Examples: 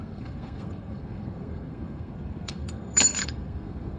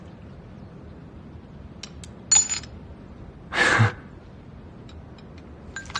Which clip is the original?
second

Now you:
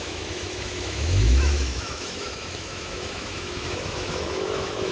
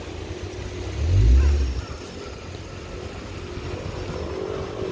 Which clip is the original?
second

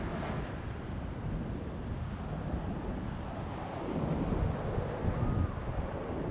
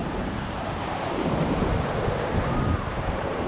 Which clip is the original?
first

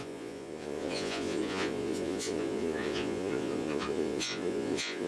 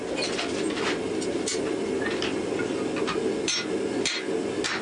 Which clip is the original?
second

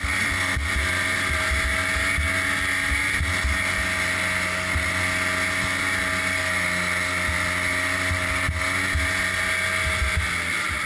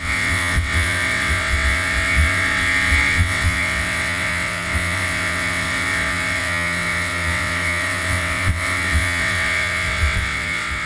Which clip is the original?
first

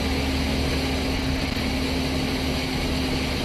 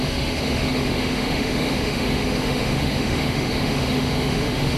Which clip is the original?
first